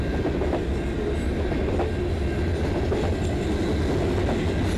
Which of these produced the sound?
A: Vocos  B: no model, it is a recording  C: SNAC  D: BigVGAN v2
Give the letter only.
B